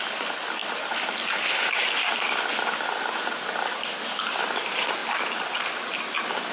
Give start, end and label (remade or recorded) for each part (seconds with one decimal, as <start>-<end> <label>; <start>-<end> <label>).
0.0-6.5 recorded